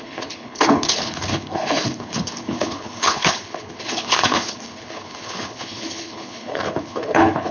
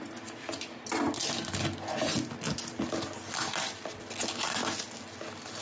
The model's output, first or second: first